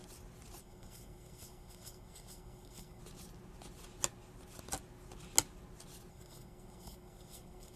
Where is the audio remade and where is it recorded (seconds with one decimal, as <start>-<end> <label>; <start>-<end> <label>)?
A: 0.0-0.6 recorded; 0.6-3.0 remade; 3.0-6.1 recorded; 6.1-7.8 remade